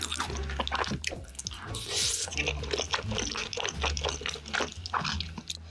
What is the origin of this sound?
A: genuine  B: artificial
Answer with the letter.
A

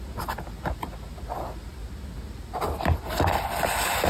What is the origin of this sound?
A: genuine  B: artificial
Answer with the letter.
A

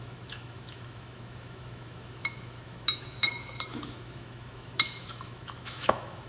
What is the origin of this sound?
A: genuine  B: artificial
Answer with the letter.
B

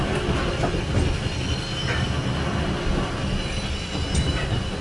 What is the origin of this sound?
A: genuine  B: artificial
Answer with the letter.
A